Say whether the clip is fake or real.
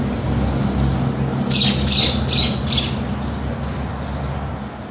real